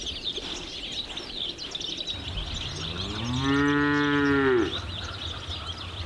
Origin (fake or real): real